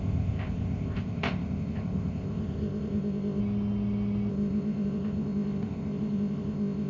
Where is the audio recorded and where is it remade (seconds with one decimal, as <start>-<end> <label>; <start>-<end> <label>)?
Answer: 0.0-3.4 remade; 3.4-4.3 recorded; 4.3-6.9 remade